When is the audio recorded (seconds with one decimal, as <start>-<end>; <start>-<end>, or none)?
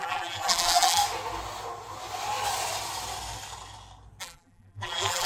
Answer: 1.0-4.2